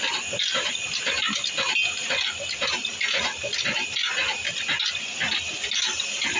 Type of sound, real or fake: real